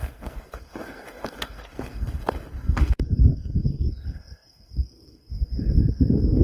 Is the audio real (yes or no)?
no